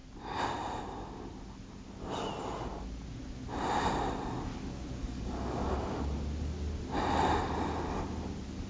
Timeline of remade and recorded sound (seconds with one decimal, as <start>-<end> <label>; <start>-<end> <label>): 0.0-5.0 recorded; 5.0-5.7 remade; 5.7-8.7 recorded